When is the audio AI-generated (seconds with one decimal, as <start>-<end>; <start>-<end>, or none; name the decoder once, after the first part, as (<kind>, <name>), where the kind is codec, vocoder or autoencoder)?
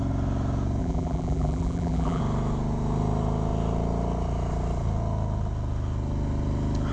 0.8-2.2 (vocoder, BigVGAN v2)